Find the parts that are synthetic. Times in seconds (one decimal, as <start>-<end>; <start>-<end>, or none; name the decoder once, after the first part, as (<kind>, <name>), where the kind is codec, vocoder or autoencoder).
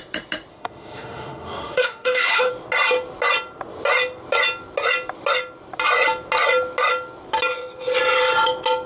0.5-2.5 (autoencoder, DAC-VAE)